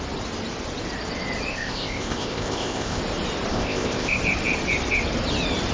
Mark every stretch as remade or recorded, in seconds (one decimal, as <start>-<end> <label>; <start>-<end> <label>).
0.0-1.5 recorded; 1.5-3.0 remade; 3.0-3.5 recorded; 3.5-4.2 remade; 4.2-5.7 recorded